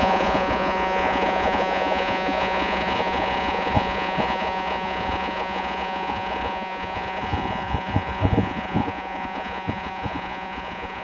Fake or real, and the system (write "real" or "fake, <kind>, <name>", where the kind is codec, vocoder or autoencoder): fake, vocoder, Vocos